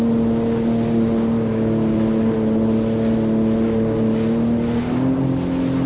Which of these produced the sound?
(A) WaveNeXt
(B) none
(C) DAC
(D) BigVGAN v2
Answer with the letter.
B